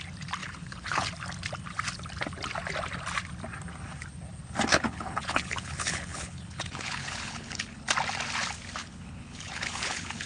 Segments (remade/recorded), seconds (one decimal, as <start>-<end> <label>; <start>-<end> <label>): 0.0-0.4 recorded; 0.4-1.1 remade; 1.1-4.7 recorded; 4.7-7.8 remade; 7.8-8.8 recorded; 8.8-10.3 remade